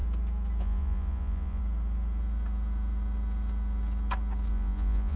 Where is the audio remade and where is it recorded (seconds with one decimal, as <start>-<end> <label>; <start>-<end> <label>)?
0.0-0.6 recorded; 0.6-1.6 remade; 1.6-4.5 recorded; 4.5-5.2 remade